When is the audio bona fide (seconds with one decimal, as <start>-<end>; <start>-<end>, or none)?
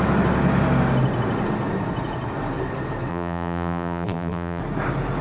0.0-3.1; 4.6-5.2